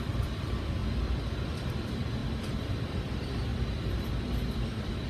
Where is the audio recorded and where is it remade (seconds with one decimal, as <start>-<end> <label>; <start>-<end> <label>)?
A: 0.0-0.8 remade; 0.8-1.5 recorded; 1.5-3.5 remade; 3.5-4.5 recorded; 4.5-5.1 remade